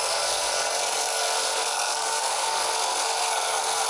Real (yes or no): no